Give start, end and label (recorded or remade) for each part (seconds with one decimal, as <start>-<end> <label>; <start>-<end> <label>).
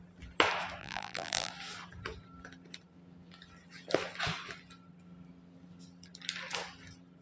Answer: 0.0-0.8 recorded; 0.8-1.5 remade; 1.5-7.2 recorded